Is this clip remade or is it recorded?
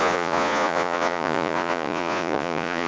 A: remade